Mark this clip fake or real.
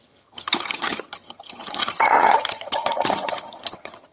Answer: fake